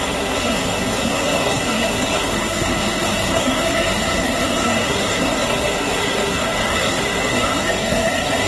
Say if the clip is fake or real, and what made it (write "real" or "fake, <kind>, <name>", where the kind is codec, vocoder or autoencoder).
fake, codec, SNAC